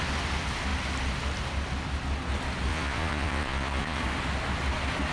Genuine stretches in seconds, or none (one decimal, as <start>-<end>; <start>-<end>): 0.0-2.7; 4.0-5.1